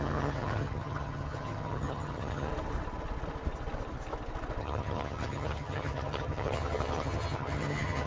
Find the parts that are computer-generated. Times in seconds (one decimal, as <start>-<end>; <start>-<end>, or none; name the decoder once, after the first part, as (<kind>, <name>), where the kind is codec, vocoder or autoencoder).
0.0-2.5 (vocoder, HiFi-GAN); 4.6-8.1